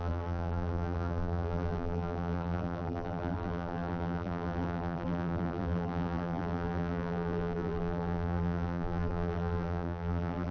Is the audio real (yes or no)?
no